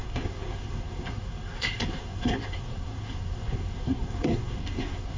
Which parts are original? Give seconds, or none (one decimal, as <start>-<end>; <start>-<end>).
none